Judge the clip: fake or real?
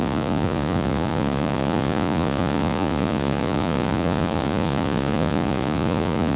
fake